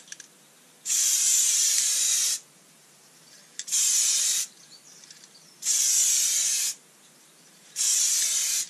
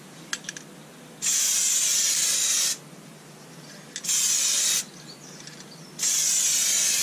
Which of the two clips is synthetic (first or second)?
first